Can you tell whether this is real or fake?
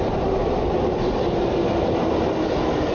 real